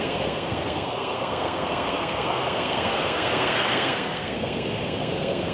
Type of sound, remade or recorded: remade